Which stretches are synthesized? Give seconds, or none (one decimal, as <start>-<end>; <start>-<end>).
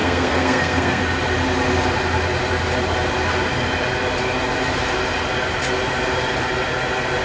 0.0-1.0